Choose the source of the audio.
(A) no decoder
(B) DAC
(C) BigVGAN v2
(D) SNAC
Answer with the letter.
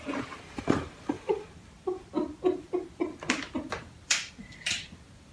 C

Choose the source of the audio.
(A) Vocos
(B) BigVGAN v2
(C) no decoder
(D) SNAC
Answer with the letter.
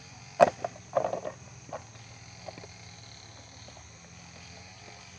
C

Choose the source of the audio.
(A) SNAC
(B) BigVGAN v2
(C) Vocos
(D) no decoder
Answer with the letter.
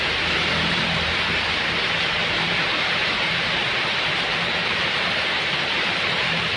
B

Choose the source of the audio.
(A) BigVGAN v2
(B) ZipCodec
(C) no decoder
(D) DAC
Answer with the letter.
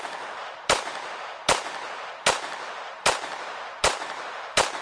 A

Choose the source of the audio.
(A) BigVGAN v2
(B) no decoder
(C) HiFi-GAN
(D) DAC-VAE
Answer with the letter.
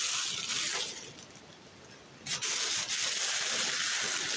B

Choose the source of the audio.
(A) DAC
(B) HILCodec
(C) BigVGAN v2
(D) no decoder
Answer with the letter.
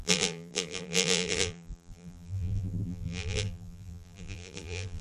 C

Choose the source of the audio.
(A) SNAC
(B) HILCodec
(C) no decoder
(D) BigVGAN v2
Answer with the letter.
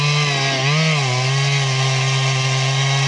C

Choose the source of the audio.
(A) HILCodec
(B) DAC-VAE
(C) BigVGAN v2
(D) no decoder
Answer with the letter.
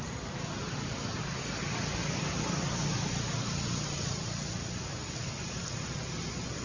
D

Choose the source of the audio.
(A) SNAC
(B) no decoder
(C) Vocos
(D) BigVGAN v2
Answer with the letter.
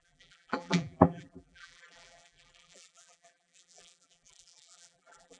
D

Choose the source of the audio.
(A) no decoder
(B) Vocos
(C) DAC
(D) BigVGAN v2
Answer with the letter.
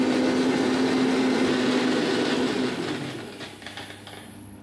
A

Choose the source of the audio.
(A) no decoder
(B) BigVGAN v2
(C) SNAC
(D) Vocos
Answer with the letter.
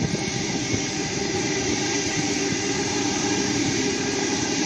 B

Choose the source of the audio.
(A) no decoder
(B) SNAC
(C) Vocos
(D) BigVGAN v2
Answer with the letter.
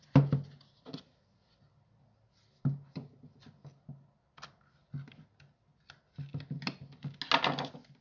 A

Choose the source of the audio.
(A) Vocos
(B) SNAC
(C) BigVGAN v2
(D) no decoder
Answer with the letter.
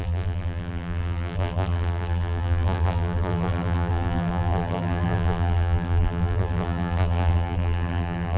C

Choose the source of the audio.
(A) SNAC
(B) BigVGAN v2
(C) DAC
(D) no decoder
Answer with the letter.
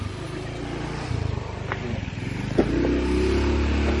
D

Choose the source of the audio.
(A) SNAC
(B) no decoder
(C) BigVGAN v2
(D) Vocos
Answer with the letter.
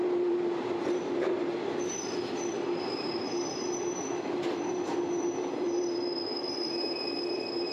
C